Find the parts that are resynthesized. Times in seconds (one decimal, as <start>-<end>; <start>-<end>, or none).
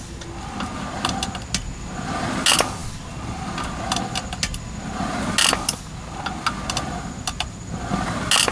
none